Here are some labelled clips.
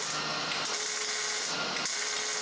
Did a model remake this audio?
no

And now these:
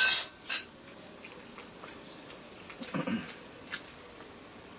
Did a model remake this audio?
no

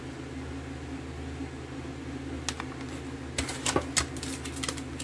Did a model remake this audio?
no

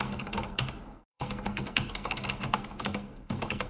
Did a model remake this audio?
yes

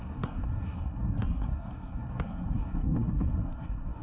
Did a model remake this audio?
yes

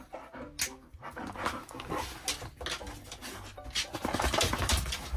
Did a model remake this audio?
no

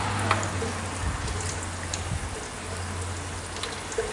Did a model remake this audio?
no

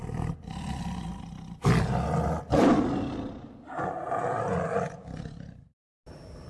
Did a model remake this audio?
no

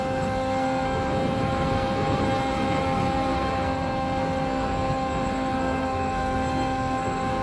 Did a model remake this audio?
yes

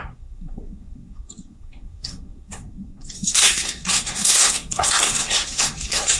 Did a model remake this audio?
yes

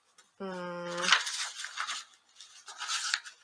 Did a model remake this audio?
no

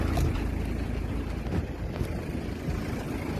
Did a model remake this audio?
no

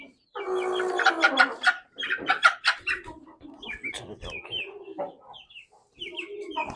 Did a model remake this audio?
no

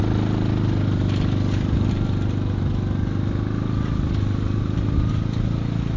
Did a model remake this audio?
no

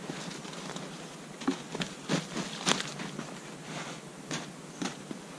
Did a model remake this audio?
no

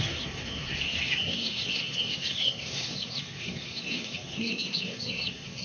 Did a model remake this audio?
yes